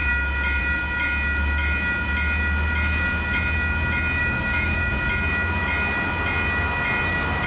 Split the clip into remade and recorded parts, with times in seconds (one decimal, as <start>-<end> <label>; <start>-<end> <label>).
0.0-4.2 recorded; 4.2-4.9 remade; 4.9-7.5 recorded